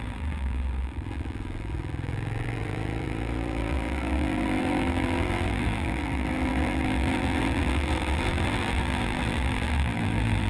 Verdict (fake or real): fake